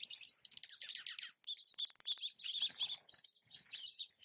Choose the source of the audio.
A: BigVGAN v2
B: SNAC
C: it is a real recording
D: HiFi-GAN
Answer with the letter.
C